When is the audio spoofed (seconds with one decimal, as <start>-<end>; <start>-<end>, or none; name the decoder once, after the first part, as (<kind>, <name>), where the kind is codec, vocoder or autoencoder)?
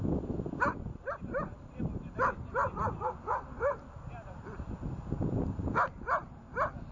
0.9-4.0 (vocoder, BigVGAN v2)